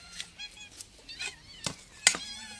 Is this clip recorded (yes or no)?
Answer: yes